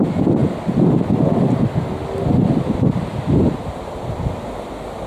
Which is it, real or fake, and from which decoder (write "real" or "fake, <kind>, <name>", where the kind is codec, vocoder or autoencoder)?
real